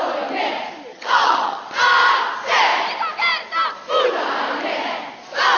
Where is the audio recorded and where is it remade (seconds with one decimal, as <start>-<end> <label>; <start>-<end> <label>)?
0.0-0.9 recorded; 0.9-1.6 remade; 1.6-5.6 recorded